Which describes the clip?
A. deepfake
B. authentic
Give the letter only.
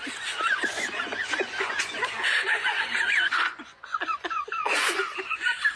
A